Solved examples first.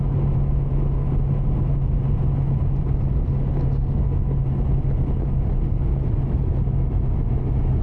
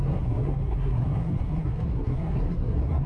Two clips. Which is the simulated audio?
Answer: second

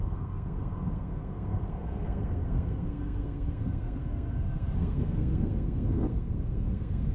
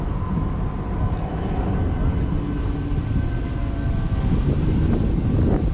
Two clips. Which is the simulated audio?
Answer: first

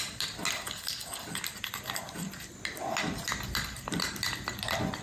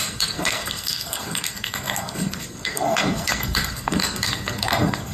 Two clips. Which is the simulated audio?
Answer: second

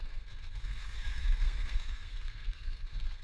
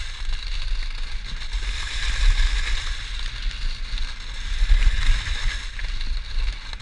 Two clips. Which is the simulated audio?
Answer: first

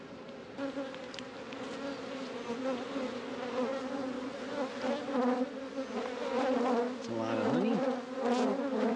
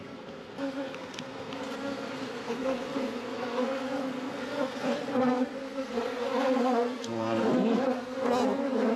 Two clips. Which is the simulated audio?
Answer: second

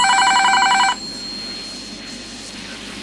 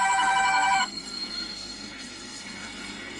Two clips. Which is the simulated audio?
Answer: second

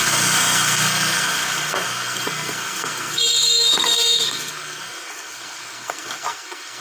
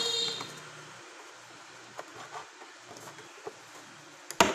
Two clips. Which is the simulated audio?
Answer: first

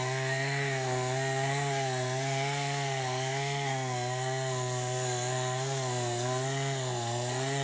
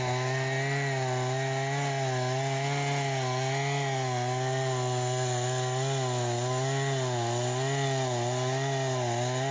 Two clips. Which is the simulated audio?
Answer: first